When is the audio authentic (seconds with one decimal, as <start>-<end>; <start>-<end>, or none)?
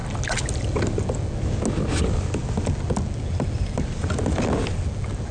0.0-5.3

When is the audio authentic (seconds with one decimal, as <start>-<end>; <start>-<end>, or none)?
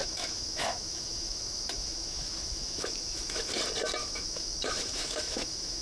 3.5-4.0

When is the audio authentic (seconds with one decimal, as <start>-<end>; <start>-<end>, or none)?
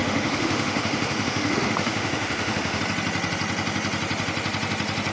2.8-5.1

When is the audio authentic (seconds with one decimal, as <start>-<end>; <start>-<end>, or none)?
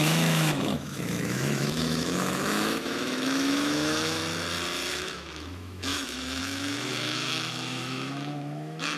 4.2-4.9